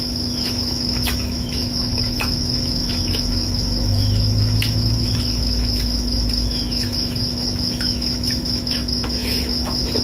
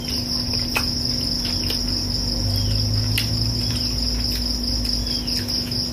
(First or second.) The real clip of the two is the second